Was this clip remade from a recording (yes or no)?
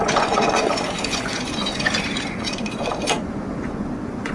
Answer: yes